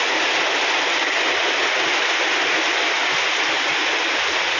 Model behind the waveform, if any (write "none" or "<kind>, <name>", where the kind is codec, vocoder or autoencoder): none